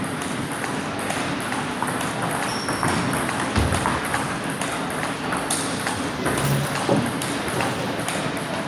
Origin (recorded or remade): recorded